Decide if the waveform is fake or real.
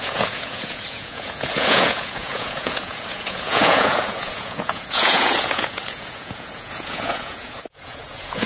fake